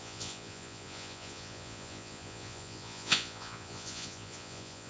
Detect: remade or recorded remade